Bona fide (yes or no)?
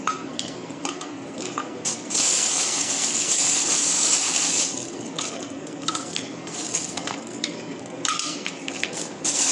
no